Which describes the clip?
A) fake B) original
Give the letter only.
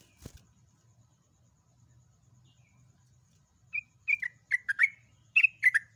B